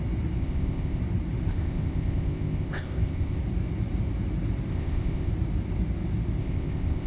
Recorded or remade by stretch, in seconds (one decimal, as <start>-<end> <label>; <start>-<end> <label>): 0.0-0.4 recorded; 0.4-1.0 remade; 1.0-1.5 recorded; 1.5-3.4 remade; 3.4-4.7 recorded; 4.7-5.3 remade; 5.3-6.4 recorded; 6.4-7.1 remade